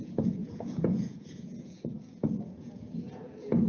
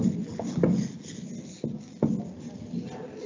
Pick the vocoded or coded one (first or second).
first